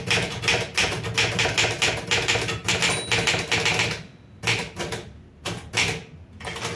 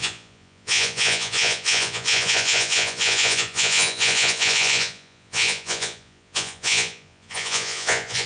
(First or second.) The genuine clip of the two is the first